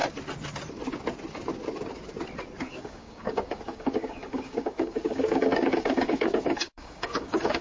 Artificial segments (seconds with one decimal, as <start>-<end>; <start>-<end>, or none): 2.7-7.6